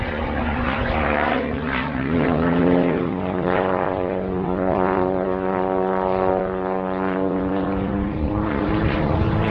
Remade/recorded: remade